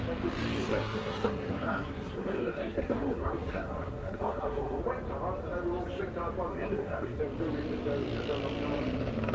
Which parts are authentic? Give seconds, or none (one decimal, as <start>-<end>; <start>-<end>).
0.0-0.7; 4.8-6.5; 7.2-9.3